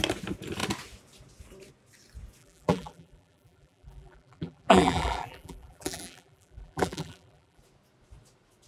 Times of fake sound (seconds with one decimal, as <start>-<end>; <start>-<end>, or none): 2.4-7.6